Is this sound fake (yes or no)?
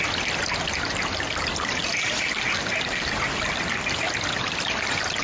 no